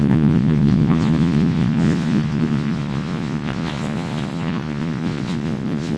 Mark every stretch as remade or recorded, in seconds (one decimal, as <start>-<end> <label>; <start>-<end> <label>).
0.0-6.0 remade